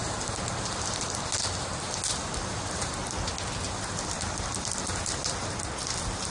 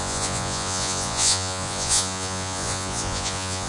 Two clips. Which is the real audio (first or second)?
first